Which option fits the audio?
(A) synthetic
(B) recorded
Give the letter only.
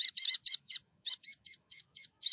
A